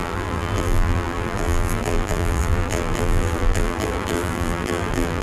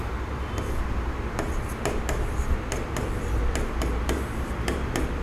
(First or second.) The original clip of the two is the second